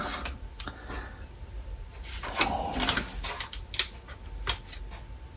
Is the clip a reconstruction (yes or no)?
no